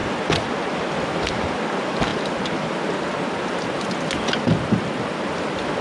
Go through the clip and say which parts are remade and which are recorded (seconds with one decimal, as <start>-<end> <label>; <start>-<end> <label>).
0.0-5.8 recorded